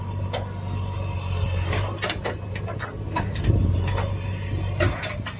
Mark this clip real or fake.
real